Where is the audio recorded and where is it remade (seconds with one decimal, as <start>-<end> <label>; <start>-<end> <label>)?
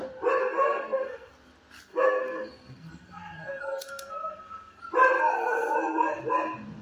0.0-0.4 recorded; 0.4-1.3 remade; 1.3-1.9 recorded; 1.9-4.8 remade; 4.8-5.3 recorded; 5.3-6.2 remade; 6.2-6.8 recorded